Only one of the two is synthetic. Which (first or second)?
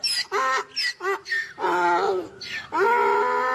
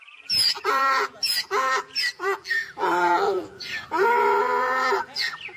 second